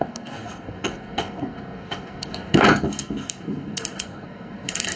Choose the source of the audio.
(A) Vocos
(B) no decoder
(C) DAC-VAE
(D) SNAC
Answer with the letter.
D